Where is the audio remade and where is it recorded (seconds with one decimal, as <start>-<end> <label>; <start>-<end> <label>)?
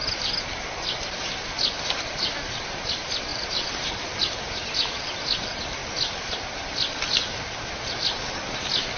0.0-3.3 recorded; 3.3-4.2 remade; 4.2-9.0 recorded